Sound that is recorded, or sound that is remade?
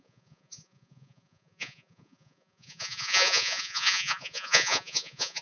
remade